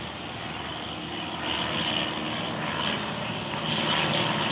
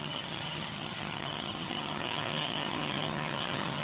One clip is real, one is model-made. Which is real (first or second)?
first